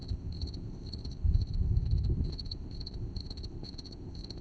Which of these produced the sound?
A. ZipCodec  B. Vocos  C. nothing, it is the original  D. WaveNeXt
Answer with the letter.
A